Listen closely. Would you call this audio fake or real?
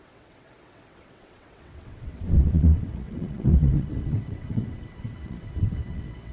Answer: fake